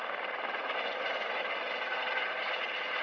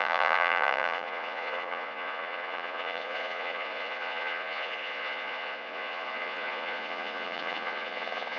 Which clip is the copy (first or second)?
second